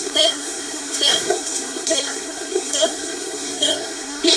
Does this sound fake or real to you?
fake